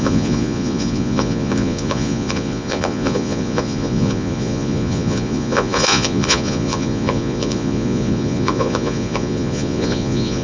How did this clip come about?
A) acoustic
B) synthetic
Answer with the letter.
B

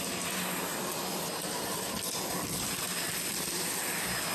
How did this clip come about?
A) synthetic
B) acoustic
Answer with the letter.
B